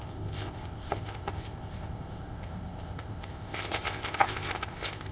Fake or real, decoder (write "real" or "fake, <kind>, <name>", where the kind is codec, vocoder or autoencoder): fake, codec, ZipCodec